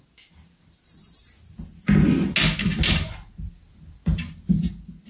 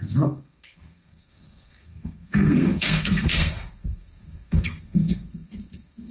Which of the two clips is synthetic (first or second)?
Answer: second